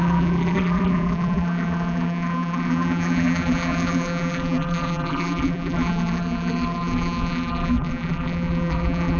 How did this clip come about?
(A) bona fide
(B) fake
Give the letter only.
B